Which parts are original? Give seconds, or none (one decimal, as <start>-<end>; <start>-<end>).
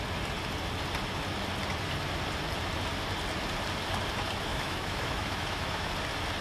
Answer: 0.0-4.5; 5.9-6.4